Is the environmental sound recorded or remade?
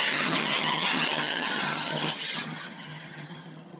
remade